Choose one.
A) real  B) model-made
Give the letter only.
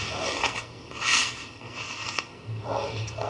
B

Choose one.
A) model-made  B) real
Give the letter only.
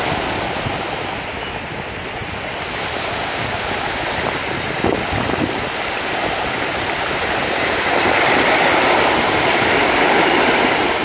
B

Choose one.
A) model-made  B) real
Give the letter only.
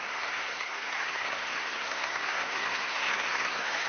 A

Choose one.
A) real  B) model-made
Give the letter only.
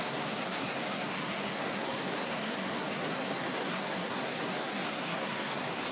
B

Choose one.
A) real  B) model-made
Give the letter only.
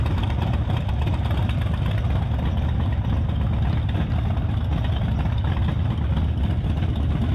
A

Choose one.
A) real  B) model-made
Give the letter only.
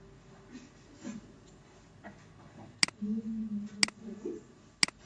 A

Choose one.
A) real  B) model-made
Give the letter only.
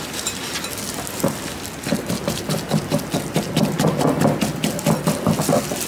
A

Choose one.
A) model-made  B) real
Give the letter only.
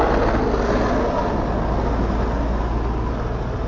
B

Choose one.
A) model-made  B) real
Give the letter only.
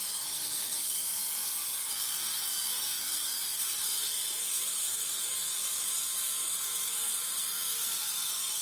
A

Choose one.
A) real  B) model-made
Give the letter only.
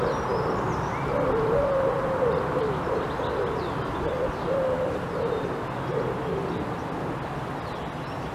A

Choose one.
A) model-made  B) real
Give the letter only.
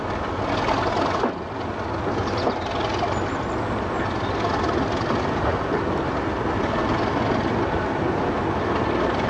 B